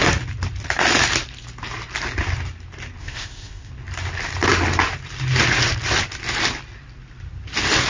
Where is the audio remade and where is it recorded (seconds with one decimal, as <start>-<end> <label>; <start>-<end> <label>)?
0.0-3.0 recorded; 3.0-3.7 remade; 3.7-7.9 recorded